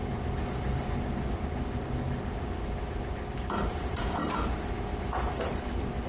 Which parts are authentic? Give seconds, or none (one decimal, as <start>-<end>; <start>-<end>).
0.0-3.7; 4.2-6.1